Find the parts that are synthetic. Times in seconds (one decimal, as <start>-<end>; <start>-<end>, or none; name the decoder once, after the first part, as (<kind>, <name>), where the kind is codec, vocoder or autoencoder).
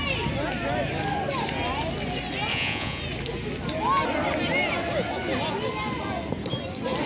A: 2.5-3.0 (vocoder, Vocos)